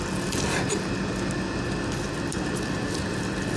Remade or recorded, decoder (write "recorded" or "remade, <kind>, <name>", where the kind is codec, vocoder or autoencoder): recorded